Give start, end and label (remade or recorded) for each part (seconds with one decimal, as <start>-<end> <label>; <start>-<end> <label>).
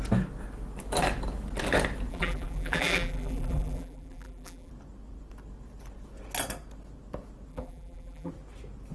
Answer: 0.0-2.1 recorded; 2.1-4.7 remade; 4.7-7.5 recorded; 7.5-8.3 remade; 8.3-8.9 recorded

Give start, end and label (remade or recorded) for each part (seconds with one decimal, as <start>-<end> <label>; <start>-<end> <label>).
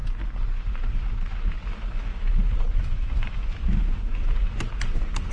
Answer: 0.0-2.1 recorded; 2.1-5.3 remade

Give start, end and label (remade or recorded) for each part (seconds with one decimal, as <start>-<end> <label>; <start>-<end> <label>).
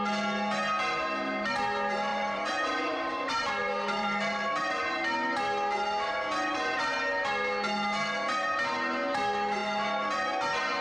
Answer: 0.0-2.1 recorded; 2.1-4.8 remade; 4.8-10.8 recorded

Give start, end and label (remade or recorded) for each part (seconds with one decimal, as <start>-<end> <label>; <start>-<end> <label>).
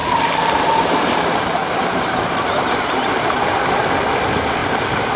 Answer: 0.0-3.1 remade; 3.1-5.2 recorded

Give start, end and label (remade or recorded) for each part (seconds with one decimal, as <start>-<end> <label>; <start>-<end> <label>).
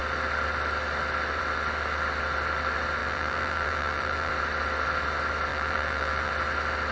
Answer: 0.0-3.0 recorded; 3.0-4.3 remade; 4.3-5.5 recorded; 5.5-6.3 remade; 6.3-6.9 recorded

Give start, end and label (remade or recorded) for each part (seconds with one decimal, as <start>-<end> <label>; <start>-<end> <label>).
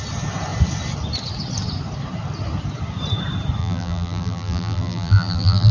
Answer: 0.0-3.6 recorded; 3.6-5.7 remade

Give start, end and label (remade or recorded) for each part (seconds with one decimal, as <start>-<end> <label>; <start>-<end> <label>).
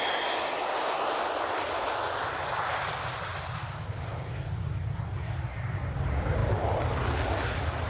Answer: 0.0-7.9 recorded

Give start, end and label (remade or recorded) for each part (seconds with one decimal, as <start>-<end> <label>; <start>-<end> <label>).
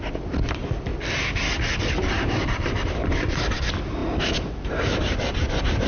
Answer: 0.0-0.9 remade; 0.9-1.8 recorded; 1.8-5.9 remade